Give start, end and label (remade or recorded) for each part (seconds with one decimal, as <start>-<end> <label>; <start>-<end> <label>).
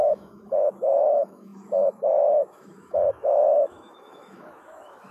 0.0-5.1 remade